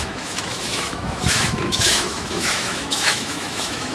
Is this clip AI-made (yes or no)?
yes